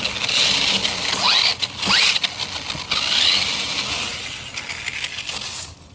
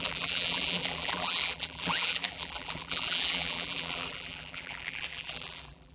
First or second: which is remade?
second